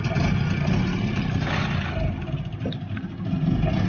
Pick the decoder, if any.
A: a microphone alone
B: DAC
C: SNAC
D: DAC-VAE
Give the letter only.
A